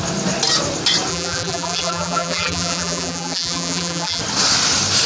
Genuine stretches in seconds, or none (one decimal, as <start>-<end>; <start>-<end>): 0.0-1.1; 4.2-5.1